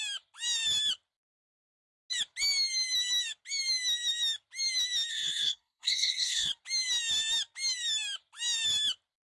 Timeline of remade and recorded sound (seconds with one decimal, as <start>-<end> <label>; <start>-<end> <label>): 0.0-5.1 recorded; 5.1-6.5 remade; 6.5-9.4 recorded

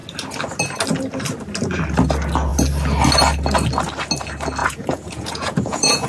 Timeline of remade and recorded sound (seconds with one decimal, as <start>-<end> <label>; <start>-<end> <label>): 0.0-4.6 recorded; 4.6-6.1 remade

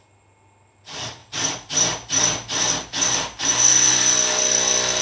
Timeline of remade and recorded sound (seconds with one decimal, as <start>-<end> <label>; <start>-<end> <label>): 0.0-5.0 recorded

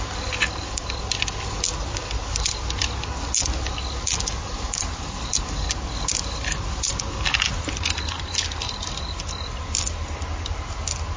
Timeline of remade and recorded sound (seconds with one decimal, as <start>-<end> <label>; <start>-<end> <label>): 0.0-11.2 recorded